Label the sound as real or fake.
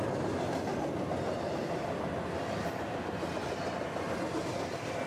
real